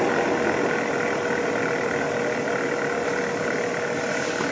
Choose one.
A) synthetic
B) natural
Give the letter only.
B